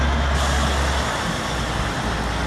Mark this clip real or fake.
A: real